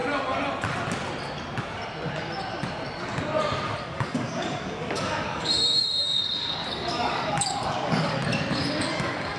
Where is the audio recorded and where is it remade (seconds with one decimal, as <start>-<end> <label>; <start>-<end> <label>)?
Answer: 0.0-3.8 recorded; 3.8-8.2 remade; 8.2-8.8 recorded; 8.8-9.4 remade